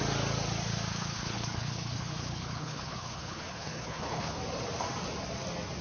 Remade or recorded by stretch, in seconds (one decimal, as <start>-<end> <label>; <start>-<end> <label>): 0.0-0.9 recorded; 0.9-4.4 remade; 4.4-5.8 recorded